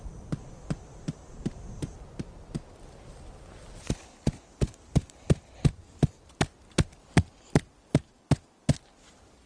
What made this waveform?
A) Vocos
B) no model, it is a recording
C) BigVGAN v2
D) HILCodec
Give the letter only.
B